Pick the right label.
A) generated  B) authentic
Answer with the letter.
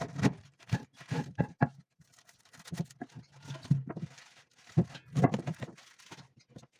B